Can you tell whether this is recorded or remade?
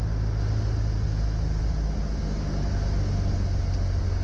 recorded